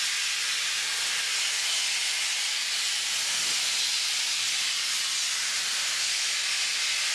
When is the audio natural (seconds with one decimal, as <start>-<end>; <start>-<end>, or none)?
0.0-7.1